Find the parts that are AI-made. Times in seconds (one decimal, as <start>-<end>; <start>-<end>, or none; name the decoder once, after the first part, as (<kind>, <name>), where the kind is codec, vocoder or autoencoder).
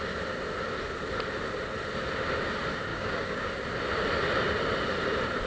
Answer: 2.9-3.5 (codec, DAC)